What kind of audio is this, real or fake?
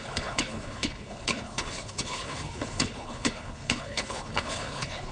fake